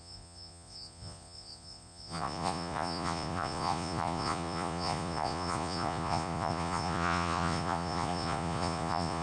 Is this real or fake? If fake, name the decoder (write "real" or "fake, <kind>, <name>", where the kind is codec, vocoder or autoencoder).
fake, vocoder, Vocos